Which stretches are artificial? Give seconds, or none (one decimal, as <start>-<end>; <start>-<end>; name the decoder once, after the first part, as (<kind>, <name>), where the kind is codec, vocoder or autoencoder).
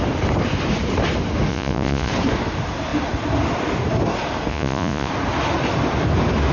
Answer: 1.5-2.1 (vocoder, Vocos); 4.5-5.1